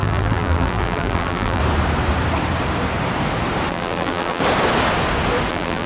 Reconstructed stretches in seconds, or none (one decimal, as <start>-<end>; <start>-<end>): 0.0-1.6; 3.7-4.4; 5.5-5.9